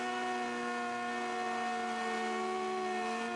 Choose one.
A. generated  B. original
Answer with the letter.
B